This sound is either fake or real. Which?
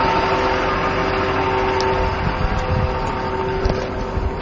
real